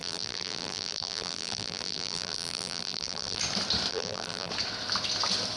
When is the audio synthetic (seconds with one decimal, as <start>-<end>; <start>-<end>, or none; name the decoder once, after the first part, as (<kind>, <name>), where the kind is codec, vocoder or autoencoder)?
0.0-3.4 (vocoder, BigVGAN v2); 3.9-4.5